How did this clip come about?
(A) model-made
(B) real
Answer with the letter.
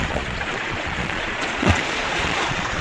A